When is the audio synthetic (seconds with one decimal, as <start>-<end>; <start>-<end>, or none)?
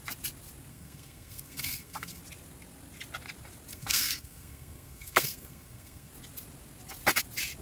0.7-2.2; 3.7-6.1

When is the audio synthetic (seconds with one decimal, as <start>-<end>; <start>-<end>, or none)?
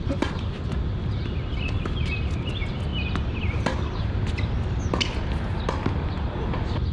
none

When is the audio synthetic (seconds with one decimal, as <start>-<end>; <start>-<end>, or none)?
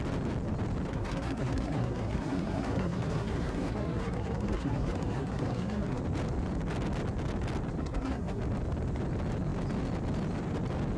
0.9-6.0; 7.8-8.4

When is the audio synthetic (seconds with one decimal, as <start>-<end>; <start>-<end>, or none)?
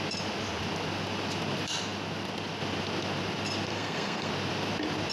3.7-4.3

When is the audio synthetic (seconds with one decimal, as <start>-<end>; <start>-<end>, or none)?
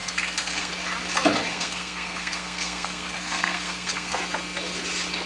0.0-0.7; 1.5-4.2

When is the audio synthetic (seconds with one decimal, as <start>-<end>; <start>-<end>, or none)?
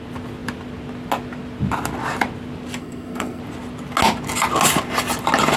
2.8-3.4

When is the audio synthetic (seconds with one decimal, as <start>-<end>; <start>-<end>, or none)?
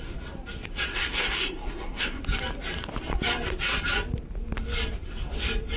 0.9-2.2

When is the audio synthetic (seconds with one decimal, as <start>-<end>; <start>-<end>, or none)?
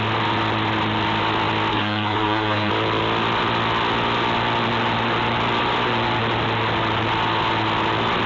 1.7-2.7